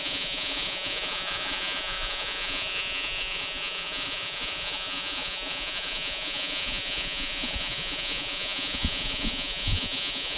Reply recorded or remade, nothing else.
remade